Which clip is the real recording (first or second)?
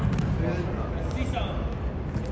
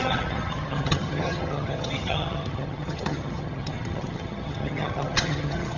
first